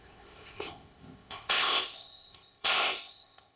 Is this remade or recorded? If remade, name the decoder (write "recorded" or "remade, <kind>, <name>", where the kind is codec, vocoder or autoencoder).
remade, codec, ZipCodec